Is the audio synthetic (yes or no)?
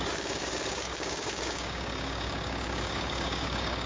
yes